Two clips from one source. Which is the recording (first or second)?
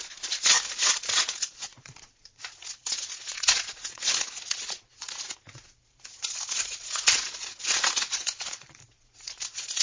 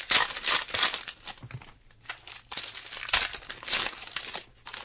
second